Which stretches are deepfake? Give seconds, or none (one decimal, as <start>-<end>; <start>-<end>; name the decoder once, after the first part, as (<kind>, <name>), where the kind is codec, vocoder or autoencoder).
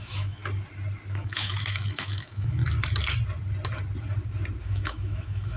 0.0-0.4 (autoencoder, DAC-VAE); 1.1-2.6; 4.6-5.6